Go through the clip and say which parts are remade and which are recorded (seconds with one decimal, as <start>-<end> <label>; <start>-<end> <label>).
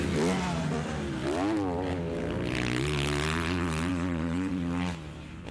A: 0.0-3.9 recorded; 3.9-4.5 remade; 4.5-5.5 recorded